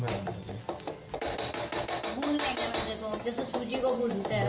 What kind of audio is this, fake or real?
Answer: real